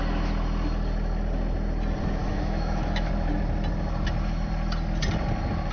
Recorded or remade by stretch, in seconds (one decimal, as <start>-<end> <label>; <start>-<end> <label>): 0.0-2.2 recorded; 2.2-3.1 remade; 3.1-5.7 recorded